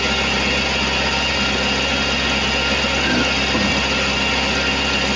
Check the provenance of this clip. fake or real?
real